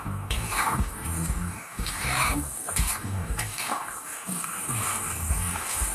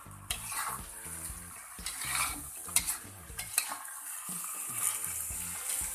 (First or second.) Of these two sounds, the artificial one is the first